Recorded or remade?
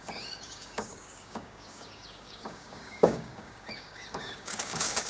remade